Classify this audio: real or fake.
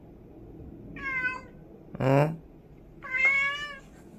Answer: real